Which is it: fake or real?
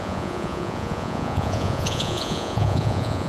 fake